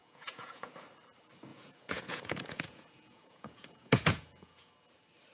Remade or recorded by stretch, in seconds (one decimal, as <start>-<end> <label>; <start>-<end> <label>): 0.0-0.7 remade; 0.7-1.5 recorded; 1.5-4.7 remade; 4.7-5.3 recorded